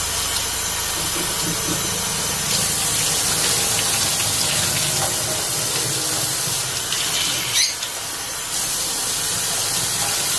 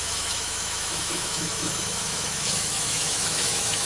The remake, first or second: second